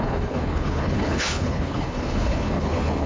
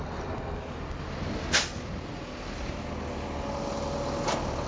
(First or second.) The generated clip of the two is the first